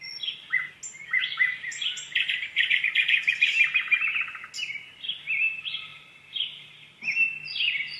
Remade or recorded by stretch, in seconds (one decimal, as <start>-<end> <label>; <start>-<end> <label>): 0.0-1.2 recorded; 1.2-4.2 remade; 4.2-8.0 recorded